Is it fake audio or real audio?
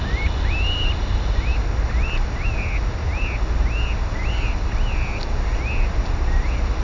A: real